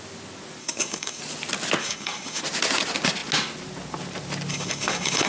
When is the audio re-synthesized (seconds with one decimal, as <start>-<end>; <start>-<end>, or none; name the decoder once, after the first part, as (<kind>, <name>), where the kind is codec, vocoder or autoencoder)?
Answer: 0.6-1.2 (codec, DAC); 1.8-2.4; 4.5-5.3